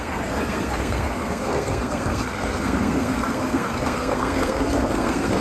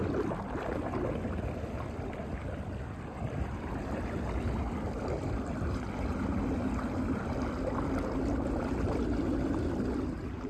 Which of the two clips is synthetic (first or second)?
first